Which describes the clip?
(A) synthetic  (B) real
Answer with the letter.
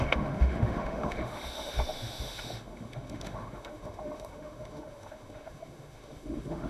A